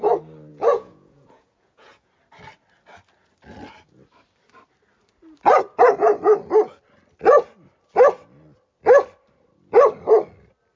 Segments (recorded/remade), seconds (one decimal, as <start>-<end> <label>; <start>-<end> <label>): 0.0-0.5 recorded; 0.5-2.1 remade; 2.1-10.8 recorded